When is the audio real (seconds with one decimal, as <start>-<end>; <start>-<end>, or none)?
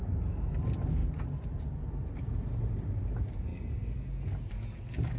0.0-5.2